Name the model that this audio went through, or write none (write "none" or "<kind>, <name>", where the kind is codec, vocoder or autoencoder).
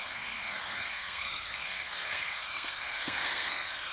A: codec, SNAC